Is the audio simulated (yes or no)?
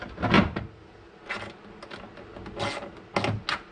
no